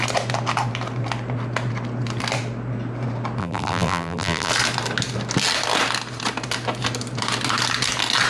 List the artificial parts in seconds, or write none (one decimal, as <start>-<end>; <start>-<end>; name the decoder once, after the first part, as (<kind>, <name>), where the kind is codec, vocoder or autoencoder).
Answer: 3.4-4.5 (vocoder, BigVGAN v2)